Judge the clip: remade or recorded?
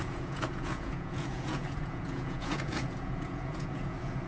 remade